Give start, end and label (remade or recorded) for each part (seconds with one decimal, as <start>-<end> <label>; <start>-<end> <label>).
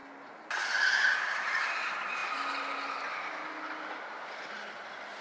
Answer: 0.0-5.2 recorded